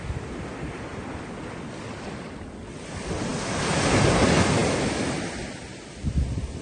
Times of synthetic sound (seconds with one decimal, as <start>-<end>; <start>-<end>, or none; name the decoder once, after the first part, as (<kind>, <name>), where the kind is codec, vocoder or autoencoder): none